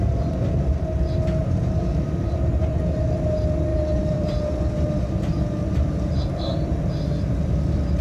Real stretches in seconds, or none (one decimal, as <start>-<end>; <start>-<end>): 0.0-1.4; 2.8-3.7; 6.2-8.0